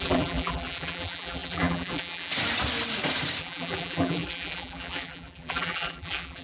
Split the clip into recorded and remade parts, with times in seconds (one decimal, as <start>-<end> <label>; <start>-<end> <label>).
0.0-2.3 remade; 2.3-3.4 recorded; 3.4-6.4 remade